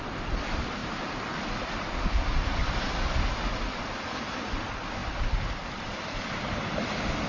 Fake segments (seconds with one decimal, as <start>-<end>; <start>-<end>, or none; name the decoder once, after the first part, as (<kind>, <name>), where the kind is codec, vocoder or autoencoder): 0.8-1.3 (vocoder, BigVGAN v2)